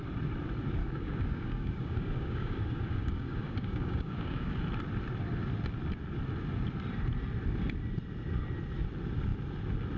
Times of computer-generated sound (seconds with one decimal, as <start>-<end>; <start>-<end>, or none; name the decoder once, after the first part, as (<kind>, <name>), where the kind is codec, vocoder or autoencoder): 0.8-4.6 (codec, DAC)